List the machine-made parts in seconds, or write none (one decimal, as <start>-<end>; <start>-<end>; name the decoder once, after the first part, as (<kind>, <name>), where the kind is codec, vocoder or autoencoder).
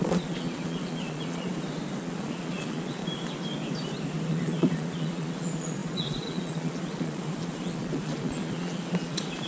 0.0-1.5 (vocoder, Vocos); 2.0-3.0; 4.3-9.5